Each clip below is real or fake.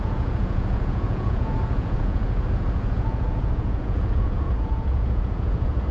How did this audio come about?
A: fake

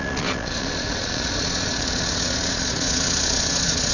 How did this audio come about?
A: fake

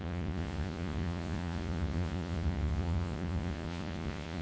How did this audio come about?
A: fake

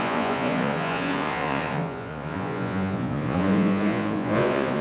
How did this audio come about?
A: fake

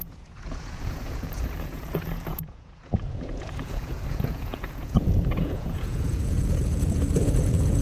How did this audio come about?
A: fake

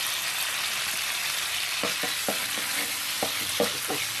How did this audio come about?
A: real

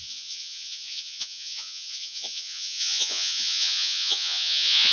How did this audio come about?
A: fake